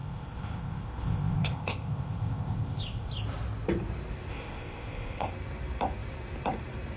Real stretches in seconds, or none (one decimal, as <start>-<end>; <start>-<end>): 3.1-4.3; 5.3-7.0

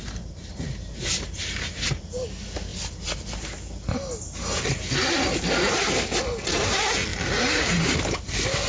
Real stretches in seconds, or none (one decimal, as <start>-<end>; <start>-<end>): 0.0-8.7

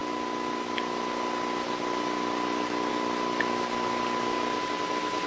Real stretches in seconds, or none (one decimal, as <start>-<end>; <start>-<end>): 0.0-5.3

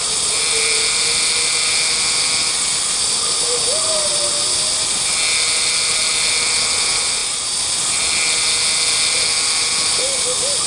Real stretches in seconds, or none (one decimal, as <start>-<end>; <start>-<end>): 0.0-10.7